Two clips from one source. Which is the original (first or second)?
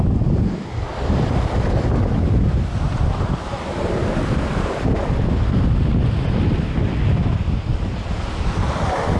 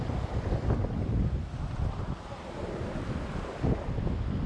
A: first